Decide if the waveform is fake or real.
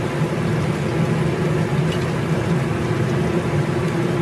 fake